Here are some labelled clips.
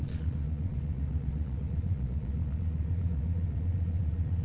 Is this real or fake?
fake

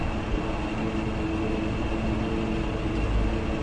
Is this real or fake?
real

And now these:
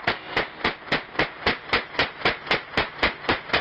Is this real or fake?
real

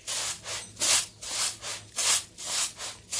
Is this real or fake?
real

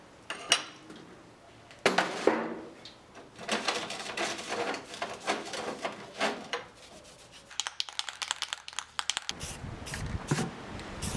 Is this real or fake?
real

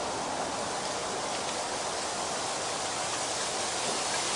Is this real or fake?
real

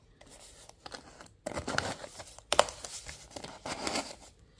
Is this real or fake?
real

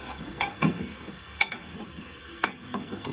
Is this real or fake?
fake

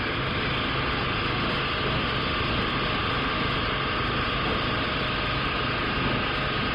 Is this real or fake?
real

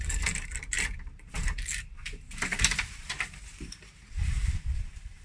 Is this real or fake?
fake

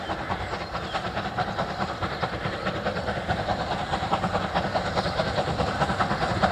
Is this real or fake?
real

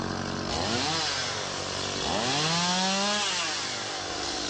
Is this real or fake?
real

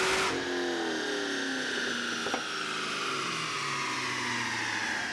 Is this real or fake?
real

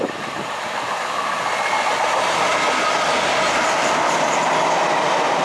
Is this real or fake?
real